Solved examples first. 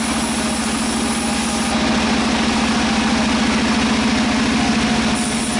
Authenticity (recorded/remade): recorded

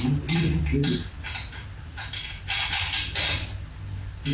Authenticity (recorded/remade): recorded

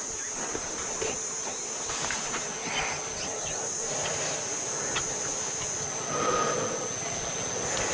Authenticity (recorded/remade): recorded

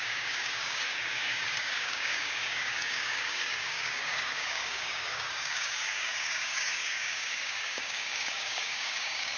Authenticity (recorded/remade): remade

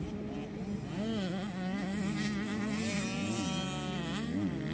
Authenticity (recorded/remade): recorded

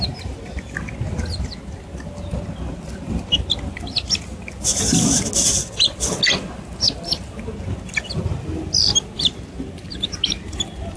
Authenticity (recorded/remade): recorded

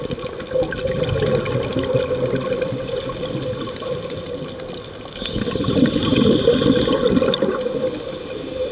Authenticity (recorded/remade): recorded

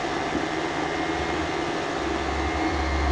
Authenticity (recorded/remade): recorded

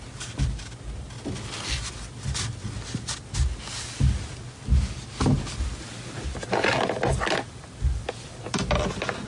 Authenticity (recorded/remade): recorded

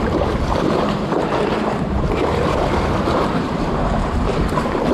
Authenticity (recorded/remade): remade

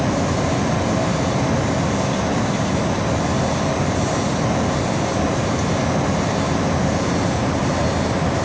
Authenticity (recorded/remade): recorded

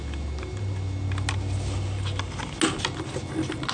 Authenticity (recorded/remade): recorded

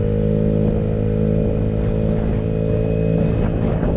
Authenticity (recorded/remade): recorded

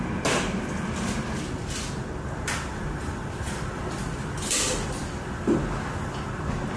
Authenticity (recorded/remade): recorded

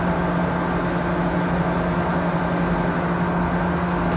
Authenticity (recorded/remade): recorded